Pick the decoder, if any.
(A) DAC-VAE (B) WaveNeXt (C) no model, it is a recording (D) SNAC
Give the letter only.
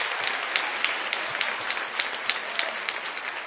C